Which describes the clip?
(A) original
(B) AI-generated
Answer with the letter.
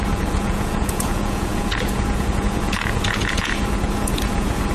B